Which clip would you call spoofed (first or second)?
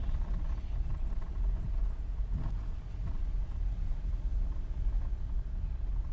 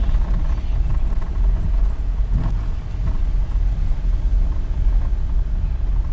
first